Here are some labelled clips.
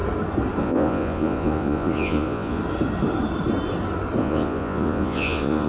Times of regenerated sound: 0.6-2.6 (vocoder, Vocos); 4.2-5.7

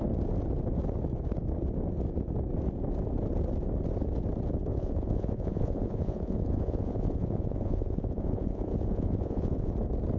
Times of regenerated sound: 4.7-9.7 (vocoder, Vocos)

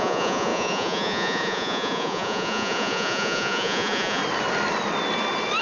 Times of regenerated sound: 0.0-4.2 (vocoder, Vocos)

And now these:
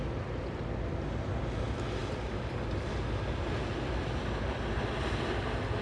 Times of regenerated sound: none